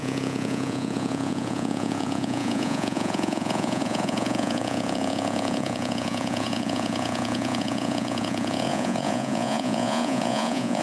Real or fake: fake